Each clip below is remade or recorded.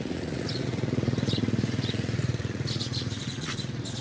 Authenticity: remade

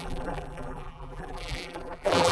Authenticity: remade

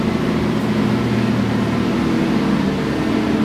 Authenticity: recorded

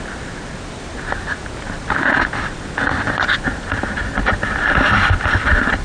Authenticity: recorded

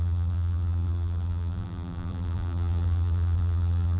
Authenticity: remade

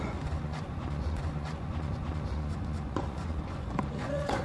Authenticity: remade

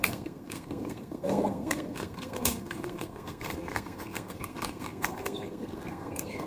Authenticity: remade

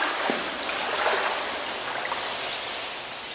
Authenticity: recorded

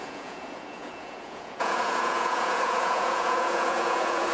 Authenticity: remade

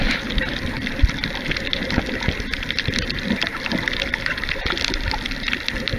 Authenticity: remade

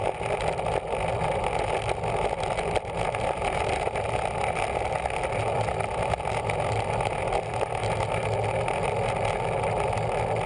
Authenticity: recorded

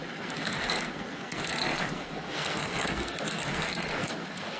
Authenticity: remade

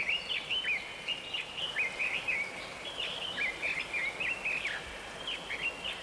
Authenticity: recorded